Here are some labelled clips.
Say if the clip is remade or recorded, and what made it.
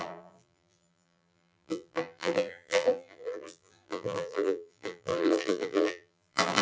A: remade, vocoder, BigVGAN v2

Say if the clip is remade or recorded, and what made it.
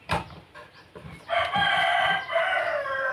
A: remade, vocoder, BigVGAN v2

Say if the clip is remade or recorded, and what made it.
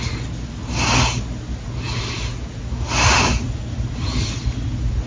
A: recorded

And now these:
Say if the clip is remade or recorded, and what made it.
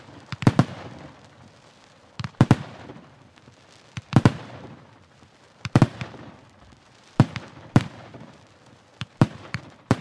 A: remade, vocoder, BigVGAN v2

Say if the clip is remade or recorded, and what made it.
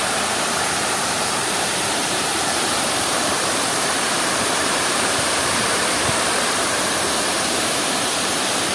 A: remade, vocoder, BigVGAN v2